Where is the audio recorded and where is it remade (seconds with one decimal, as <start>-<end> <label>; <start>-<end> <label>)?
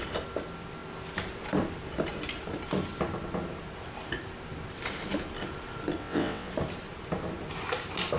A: 0.0-6.0 recorded; 6.0-6.5 remade; 6.5-8.2 recorded